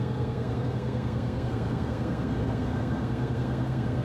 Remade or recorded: remade